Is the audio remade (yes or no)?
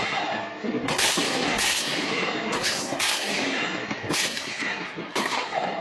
yes